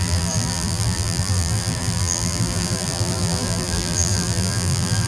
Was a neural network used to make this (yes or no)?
yes